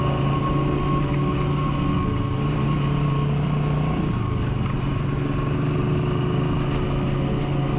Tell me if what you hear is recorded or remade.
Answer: recorded